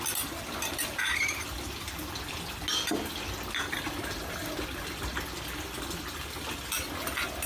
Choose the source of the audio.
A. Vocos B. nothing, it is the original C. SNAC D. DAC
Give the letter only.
B